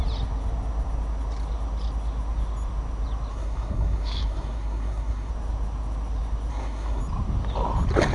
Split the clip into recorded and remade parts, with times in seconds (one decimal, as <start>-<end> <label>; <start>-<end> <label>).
0.0-3.3 recorded; 3.3-5.3 remade; 5.3-6.5 recorded; 6.5-7.0 remade; 7.0-8.1 recorded